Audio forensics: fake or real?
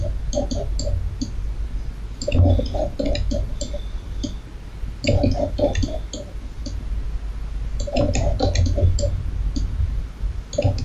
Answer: real